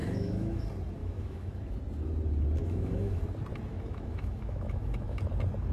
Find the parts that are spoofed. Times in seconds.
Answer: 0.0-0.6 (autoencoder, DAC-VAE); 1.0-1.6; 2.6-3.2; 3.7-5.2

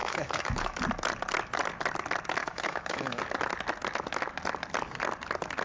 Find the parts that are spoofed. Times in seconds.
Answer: 0.0-0.8 (autoencoder, DAC-VAE); 2.4-3.2

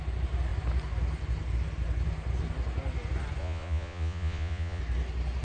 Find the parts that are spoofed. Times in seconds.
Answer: 3.4-4.8 (vocoder, Vocos)

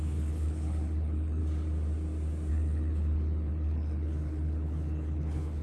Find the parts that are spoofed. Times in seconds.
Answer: 0.0-1.4 (codec, HILCodec); 2.5-5.6

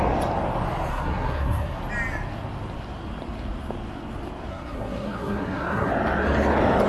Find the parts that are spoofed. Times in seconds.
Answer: 0.9-1.8 (codec, SNAC); 4.5-5.9

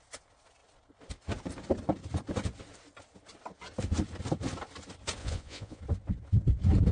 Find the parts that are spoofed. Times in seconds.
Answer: 5.2-5.8 (vocoder, Vocos)

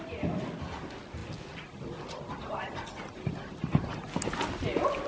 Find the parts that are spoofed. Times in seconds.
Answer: none